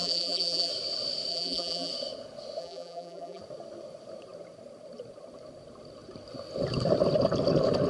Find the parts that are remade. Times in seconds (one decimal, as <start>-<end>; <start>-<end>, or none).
0.0-0.7; 1.3-1.9; 2.6-3.4